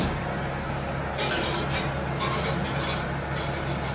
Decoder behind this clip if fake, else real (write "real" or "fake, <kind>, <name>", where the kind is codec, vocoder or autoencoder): real